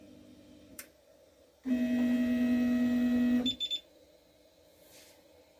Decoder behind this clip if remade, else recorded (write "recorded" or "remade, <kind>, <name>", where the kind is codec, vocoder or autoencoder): recorded